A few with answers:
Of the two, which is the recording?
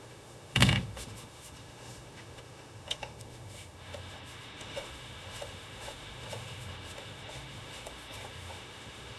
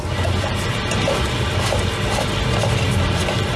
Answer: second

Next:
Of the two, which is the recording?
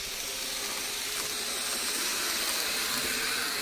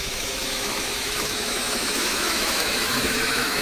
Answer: first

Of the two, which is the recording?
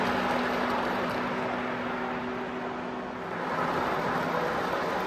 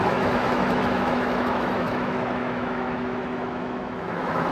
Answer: first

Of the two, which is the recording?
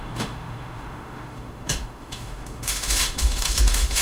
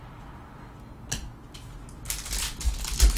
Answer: second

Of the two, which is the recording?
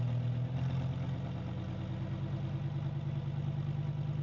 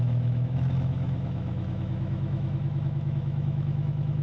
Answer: first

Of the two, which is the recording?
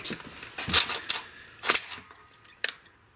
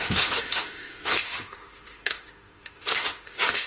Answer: first